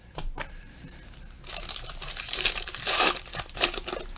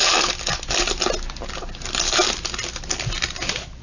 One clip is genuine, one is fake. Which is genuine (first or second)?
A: second